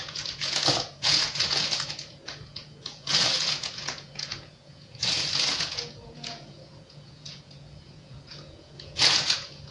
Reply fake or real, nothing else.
fake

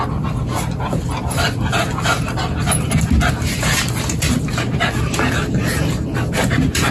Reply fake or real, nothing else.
real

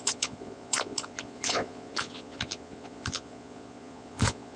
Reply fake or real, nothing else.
fake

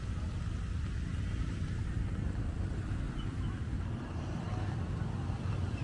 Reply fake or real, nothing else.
real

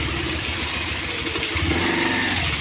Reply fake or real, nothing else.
real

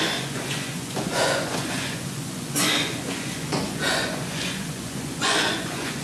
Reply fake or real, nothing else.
fake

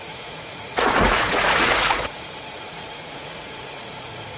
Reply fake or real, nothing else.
fake